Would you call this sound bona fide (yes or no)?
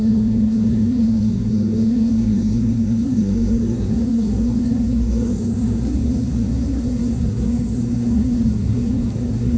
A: no